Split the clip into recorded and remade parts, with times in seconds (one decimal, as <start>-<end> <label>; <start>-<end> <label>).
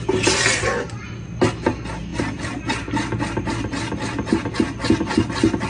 0.0-5.7 recorded